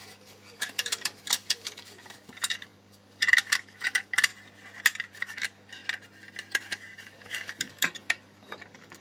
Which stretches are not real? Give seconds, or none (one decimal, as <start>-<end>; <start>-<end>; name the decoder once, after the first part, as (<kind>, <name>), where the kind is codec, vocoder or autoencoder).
0.0-4.3 (codec, DAC); 5.1-5.8; 6.6-9.0